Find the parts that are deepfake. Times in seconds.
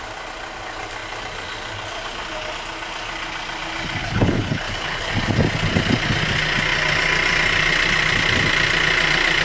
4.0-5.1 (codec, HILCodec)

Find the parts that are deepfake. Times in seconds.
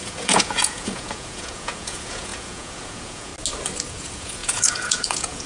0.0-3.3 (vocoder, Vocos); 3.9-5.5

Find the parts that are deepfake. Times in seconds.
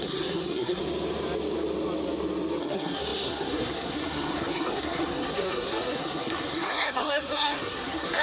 0.0-0.8 (codec, SNAC); 2.6-8.2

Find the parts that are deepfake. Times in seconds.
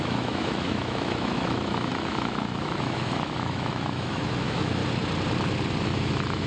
0.0-4.8 (autoencoder, DAC-VAE); 5.8-6.5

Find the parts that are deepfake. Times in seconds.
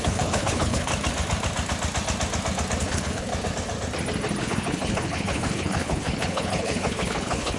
0.0-0.9 (codec, HILCodec); 2.8-3.3; 4.4-7.6